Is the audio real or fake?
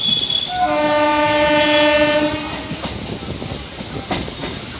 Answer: real